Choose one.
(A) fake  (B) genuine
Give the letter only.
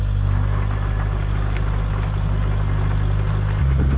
B